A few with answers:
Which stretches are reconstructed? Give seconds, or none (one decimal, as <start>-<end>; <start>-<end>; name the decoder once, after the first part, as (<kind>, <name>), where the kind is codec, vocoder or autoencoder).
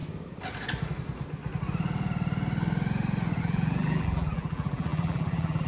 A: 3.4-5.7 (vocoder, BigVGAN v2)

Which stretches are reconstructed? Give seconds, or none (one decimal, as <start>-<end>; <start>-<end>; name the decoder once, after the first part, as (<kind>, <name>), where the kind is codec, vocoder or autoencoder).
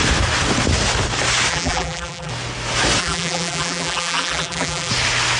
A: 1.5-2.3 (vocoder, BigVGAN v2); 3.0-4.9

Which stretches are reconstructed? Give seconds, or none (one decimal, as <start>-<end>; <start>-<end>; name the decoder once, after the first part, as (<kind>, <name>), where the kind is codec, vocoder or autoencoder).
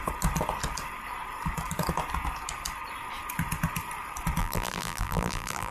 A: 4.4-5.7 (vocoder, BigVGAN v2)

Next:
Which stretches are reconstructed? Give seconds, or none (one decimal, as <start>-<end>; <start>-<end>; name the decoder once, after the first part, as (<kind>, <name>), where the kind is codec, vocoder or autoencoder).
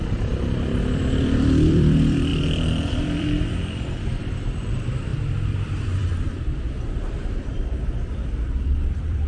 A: 0.0-9.3 (vocoder, BigVGAN v2)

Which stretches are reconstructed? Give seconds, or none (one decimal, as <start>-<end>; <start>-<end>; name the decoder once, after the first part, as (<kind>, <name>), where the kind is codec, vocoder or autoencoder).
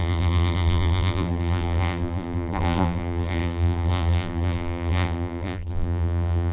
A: 0.0-6.5 (vocoder, BigVGAN v2)